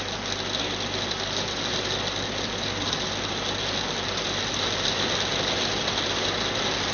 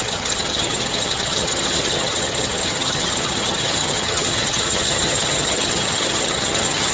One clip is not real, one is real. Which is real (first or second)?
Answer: first